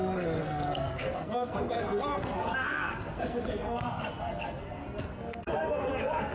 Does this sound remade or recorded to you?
remade